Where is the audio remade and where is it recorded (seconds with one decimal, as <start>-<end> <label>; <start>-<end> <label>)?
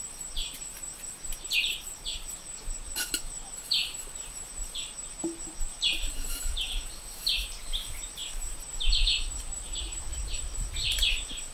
0.0-11.5 remade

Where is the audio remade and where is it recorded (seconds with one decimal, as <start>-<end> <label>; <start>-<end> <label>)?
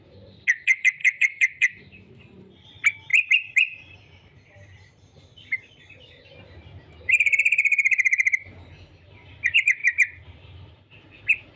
0.0-1.0 recorded; 1.0-2.1 remade; 2.1-3.1 recorded; 3.1-6.3 remade; 6.3-9.8 recorded; 9.8-10.7 remade; 10.7-11.6 recorded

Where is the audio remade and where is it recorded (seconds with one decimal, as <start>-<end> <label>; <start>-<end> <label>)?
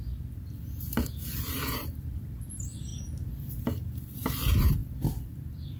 0.0-2.9 remade; 2.9-3.6 recorded; 3.6-4.8 remade; 4.8-5.8 recorded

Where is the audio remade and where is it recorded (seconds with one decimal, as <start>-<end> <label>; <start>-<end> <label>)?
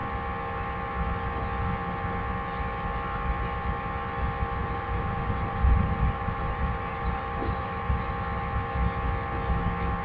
0.0-4.6 recorded; 4.6-8.1 remade; 8.1-10.0 recorded